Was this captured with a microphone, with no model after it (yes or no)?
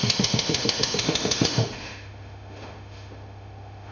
no